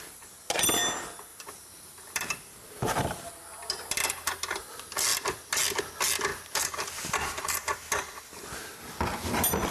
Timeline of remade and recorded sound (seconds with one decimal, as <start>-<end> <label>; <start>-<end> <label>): 0.0-1.3 recorded; 1.3-3.3 remade; 3.3-6.3 recorded; 6.3-7.8 remade; 7.8-9.7 recorded